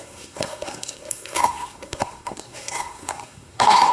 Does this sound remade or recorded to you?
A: remade